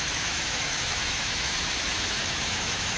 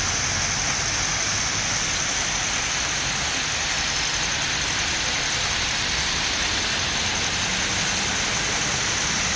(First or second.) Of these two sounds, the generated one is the first